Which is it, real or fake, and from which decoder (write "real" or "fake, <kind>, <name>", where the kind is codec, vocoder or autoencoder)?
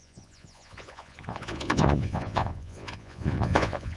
fake, vocoder, Vocos